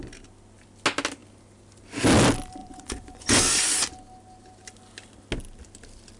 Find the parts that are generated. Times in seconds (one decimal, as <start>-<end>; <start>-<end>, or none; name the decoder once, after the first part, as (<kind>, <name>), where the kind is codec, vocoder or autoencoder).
2.6-3.4 (vocoder, Vocos)